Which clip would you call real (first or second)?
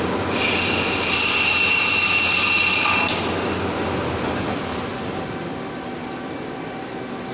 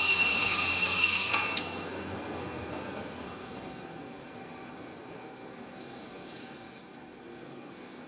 first